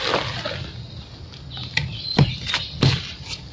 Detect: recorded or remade recorded